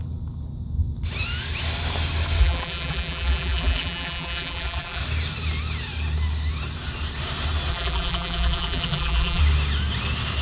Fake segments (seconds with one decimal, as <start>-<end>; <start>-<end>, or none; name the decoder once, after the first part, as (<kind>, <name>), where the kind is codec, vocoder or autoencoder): 2.4-5.0 (vocoder, BigVGAN v2); 7.7-9.4